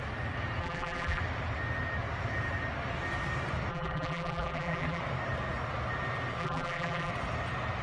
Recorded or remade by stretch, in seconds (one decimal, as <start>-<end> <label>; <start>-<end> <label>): 0.0-0.6 recorded; 0.6-1.2 remade; 1.2-3.7 recorded; 3.7-5.0 remade; 5.0-6.4 recorded; 6.4-7.1 remade; 7.1-7.8 recorded

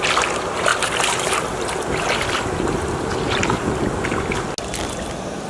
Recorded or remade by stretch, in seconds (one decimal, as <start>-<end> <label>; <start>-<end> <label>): 0.0-5.5 recorded

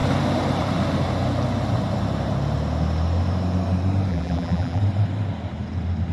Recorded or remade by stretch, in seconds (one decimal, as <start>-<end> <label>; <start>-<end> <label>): 0.0-4.1 recorded; 4.1-4.8 remade; 4.8-6.1 recorded

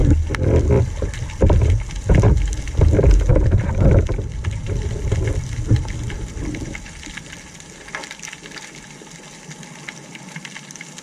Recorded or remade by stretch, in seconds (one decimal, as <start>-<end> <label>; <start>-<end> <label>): 0.0-11.0 recorded

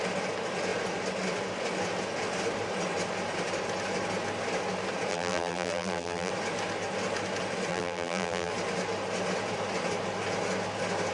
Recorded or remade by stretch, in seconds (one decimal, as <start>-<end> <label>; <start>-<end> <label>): 0.0-5.1 recorded; 5.1-6.3 remade; 6.3-7.7 recorded; 7.7-8.5 remade; 8.5-11.1 recorded

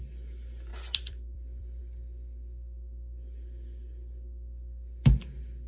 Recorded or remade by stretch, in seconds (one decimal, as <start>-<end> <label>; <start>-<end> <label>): 0.0-0.7 recorded; 0.7-1.8 remade; 1.8-5.7 recorded

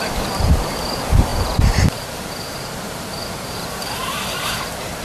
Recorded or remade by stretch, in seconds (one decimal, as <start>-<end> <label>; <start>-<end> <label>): 0.0-1.3 remade; 1.3-3.3 recorded; 3.3-5.0 remade

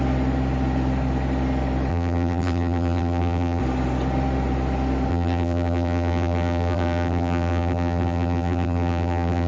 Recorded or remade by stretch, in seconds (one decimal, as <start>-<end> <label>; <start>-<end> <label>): 0.0-1.9 recorded; 1.9-3.6 remade; 3.6-5.1 recorded; 5.1-9.5 remade